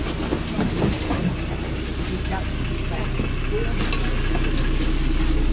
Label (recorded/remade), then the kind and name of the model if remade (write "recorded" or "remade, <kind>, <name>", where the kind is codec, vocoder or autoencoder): recorded